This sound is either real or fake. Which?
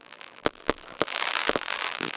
fake